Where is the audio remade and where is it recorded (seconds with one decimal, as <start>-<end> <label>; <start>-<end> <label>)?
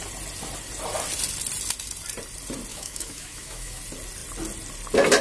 0.0-2.7 recorded; 2.7-3.8 remade; 3.8-5.2 recorded